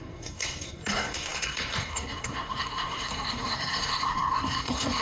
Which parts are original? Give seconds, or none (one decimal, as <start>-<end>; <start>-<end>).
none